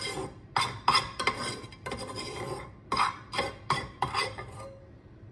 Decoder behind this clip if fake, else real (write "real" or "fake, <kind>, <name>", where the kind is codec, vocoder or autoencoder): fake, vocoder, BigVGAN v2